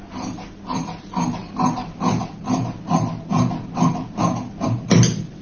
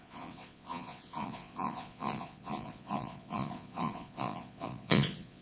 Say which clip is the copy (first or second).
second